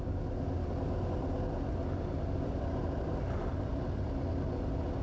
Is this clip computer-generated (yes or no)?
no